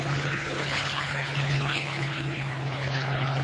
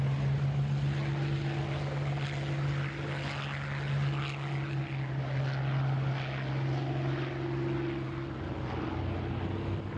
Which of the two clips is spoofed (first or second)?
first